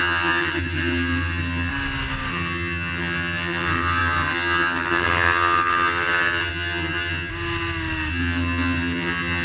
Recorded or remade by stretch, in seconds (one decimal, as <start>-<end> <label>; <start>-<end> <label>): 0.0-1.7 remade; 1.7-2.3 recorded; 2.3-7.3 remade; 7.3-8.1 recorded; 8.1-9.4 remade